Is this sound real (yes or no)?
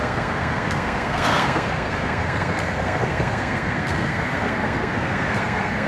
no